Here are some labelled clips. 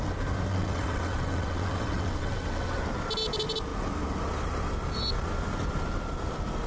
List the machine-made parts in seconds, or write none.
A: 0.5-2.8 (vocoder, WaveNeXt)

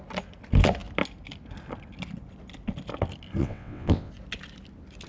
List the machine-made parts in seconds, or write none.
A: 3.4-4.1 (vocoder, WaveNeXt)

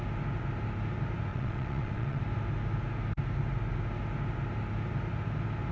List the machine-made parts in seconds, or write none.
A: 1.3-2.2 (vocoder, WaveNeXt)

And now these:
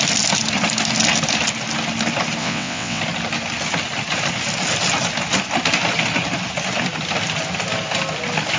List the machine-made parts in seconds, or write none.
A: 2.4-3.0 (vocoder, WaveNeXt)